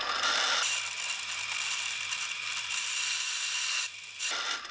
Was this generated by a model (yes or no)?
no